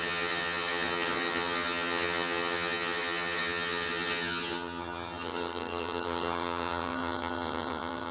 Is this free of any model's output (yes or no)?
no